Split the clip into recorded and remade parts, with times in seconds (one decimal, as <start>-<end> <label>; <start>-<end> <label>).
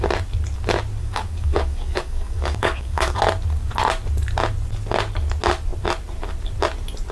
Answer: 0.0-1.0 recorded; 1.0-3.2 remade; 3.2-7.1 recorded